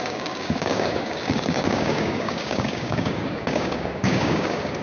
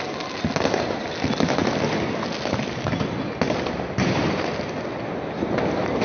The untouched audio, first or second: second